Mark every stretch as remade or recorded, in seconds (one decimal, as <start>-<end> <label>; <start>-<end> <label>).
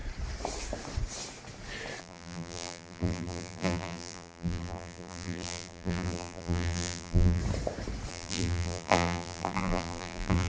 0.0-2.0 recorded; 2.0-7.4 remade; 7.4-8.1 recorded; 8.1-10.5 remade